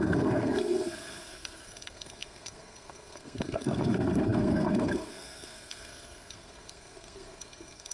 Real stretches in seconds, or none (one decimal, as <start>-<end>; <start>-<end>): none